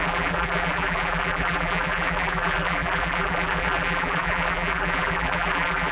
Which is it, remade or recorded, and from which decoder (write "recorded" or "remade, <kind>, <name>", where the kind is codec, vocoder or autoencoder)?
remade, vocoder, BigVGAN v2